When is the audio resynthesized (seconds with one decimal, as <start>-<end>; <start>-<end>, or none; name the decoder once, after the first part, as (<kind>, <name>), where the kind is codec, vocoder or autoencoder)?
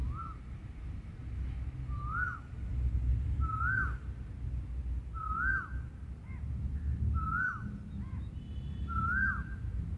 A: none